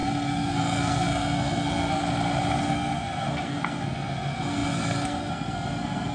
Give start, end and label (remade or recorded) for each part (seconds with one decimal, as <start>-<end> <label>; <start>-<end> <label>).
0.0-2.0 remade; 2.0-2.6 recorded; 2.6-6.1 remade